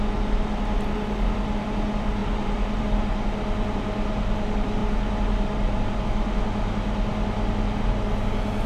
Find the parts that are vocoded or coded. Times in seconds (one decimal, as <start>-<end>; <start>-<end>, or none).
none